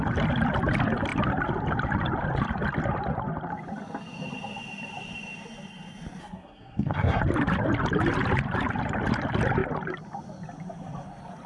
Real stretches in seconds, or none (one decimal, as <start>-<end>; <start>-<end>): 0.0-6.2; 7.2-11.5